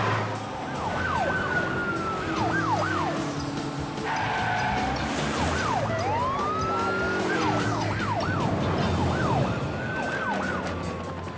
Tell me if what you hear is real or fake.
real